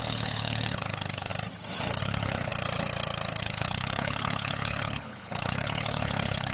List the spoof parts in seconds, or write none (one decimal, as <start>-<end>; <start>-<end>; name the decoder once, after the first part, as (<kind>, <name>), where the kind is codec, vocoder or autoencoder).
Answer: 0.0-1.3 (codec, HILCodec); 2.0-2.5; 3.4-6.5